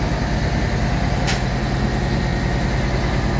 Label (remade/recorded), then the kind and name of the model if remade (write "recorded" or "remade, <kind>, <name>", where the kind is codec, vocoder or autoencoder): recorded